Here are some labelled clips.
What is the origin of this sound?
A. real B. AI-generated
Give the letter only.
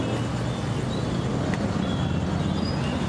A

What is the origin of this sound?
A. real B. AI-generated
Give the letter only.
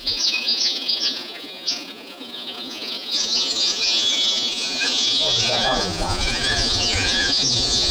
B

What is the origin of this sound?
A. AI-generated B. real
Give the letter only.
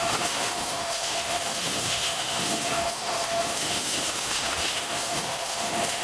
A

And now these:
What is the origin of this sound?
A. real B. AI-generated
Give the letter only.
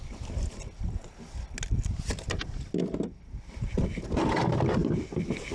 A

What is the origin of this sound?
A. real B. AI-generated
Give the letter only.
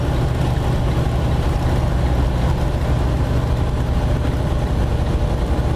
A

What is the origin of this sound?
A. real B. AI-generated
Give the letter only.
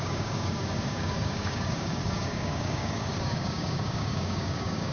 B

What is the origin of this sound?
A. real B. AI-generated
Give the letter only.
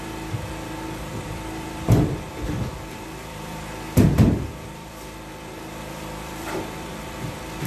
B